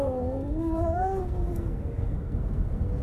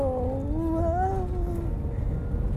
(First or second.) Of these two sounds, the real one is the second